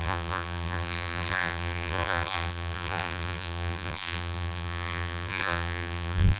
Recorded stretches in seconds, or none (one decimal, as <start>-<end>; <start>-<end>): none